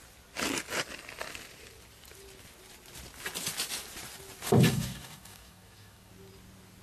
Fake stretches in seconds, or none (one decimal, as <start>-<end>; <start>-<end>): 4.7-6.1